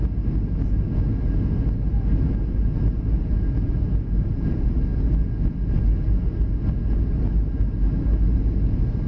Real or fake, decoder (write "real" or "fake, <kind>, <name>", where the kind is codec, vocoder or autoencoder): real